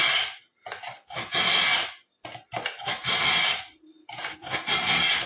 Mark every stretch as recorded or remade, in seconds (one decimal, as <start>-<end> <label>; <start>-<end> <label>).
0.0-5.3 recorded